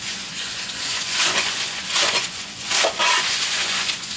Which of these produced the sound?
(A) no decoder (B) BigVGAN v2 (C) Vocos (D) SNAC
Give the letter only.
C